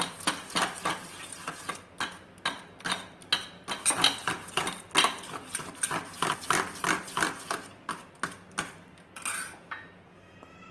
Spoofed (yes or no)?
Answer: no